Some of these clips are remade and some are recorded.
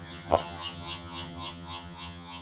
remade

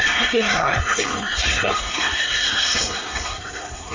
remade